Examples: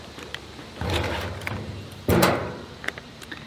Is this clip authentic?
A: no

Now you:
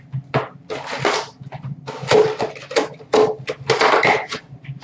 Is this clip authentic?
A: yes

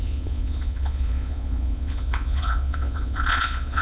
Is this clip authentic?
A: no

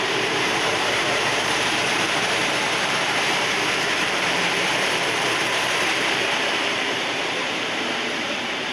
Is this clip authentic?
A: no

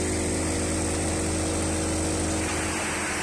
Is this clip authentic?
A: yes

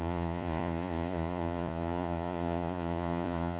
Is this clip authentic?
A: no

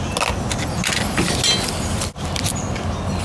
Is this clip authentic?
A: yes